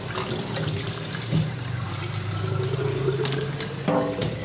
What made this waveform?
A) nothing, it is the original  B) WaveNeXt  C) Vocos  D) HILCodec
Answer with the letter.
A